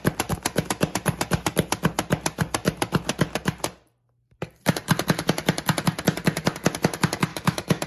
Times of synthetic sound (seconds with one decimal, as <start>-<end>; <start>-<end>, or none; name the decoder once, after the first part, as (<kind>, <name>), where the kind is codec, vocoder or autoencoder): 7.3-7.9 (autoencoder, DAC-VAE)